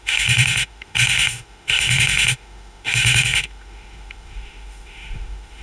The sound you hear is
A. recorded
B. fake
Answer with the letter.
B